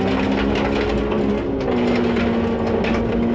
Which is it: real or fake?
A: real